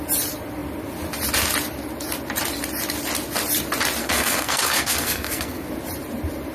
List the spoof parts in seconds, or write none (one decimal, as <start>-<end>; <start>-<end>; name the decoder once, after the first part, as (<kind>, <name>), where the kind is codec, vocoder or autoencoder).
4.0-5.7 (codec, SNAC)